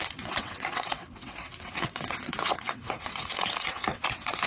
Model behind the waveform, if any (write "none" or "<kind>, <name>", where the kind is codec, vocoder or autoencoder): vocoder, WaveNeXt